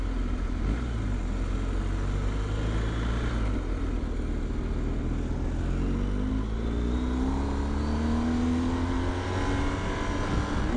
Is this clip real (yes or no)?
yes